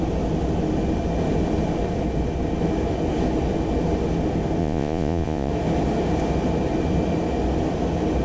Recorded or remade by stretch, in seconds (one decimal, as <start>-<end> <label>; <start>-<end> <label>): 0.0-4.6 recorded; 4.6-5.5 remade; 5.5-8.2 recorded